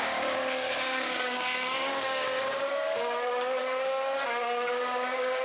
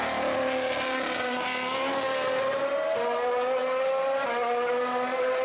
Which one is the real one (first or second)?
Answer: second